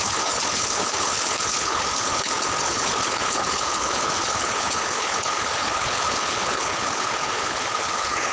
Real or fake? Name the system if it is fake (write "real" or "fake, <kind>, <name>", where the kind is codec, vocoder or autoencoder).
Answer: fake, codec, HILCodec